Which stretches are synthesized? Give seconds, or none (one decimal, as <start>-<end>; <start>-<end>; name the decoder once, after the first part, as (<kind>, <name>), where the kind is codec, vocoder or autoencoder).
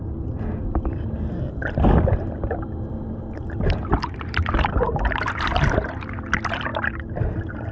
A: none